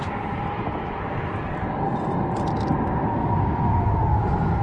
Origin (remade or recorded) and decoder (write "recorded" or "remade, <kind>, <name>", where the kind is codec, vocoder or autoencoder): recorded